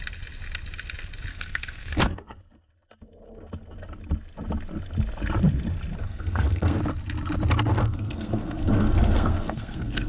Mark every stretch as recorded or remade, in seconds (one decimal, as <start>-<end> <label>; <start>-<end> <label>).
0.0-1.3 recorded; 1.3-2.4 remade; 2.4-6.1 recorded; 6.1-6.8 remade; 6.8-7.7 recorded; 7.7-10.1 remade